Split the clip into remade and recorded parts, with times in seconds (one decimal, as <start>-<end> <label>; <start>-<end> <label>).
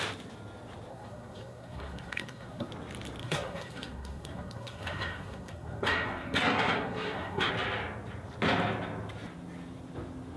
0.0-0.9 recorded; 0.9-2.7 remade; 2.7-3.2 recorded; 3.2-7.5 remade; 7.5-10.4 recorded